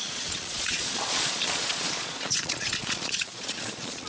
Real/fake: fake